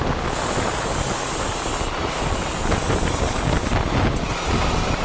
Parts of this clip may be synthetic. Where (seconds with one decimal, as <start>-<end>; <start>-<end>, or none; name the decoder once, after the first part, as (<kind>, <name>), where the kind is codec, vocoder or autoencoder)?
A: none